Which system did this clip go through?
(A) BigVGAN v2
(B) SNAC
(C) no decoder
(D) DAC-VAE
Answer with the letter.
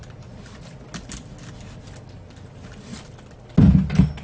C